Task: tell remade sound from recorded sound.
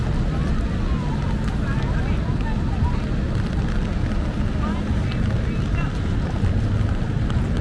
recorded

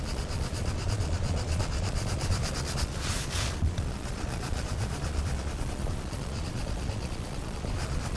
remade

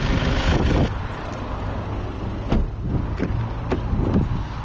recorded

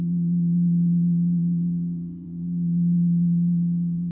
remade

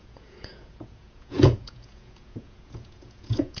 remade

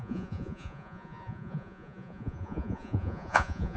remade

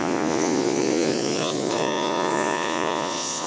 remade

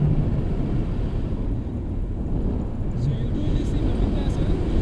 recorded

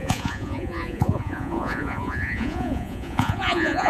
remade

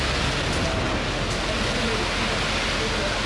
recorded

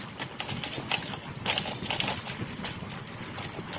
recorded